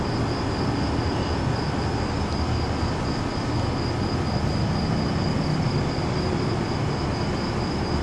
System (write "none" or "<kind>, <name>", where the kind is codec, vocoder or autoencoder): none